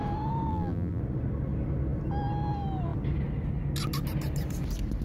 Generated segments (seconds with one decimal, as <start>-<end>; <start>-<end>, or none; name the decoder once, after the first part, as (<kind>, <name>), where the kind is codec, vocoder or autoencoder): 0.5-1.0 (vocoder, BigVGAN v2)